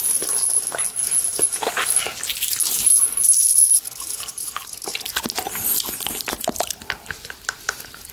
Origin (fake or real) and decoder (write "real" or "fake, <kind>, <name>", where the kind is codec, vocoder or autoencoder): real